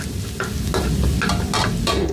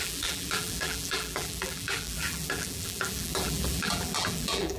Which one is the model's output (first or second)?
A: second